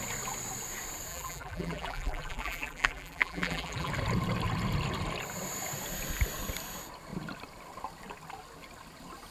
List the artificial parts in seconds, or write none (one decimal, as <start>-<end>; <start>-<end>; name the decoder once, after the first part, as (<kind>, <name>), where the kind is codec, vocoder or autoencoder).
1.1-3.9 (vocoder, BigVGAN v2)